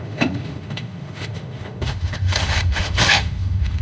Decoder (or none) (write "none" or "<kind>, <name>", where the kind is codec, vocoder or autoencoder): autoencoder, DAC-VAE